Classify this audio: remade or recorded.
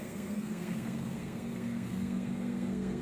remade